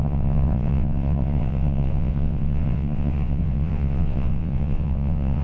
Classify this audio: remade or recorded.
remade